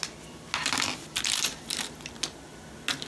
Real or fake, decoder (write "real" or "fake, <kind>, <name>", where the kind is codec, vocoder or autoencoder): real